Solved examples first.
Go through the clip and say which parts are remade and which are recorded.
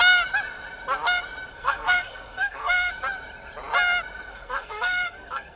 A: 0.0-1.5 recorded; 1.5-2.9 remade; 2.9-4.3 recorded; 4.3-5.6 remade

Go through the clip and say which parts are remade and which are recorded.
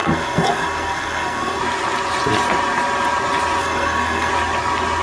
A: 0.0-1.6 remade; 1.6-3.6 recorded; 3.6-4.3 remade; 4.3-5.0 recorded